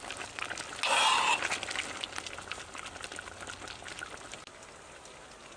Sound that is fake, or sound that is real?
real